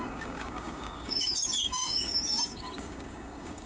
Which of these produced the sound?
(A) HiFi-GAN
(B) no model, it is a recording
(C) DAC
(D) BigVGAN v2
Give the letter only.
C